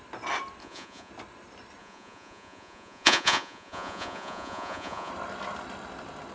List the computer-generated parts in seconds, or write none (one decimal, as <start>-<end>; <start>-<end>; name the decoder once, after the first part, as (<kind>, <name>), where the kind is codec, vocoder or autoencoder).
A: 0.6-1.1 (vocoder, Vocos); 1.8-5.1